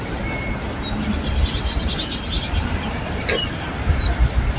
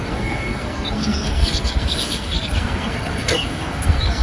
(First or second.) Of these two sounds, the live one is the first